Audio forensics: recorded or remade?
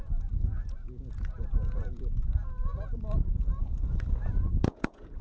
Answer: remade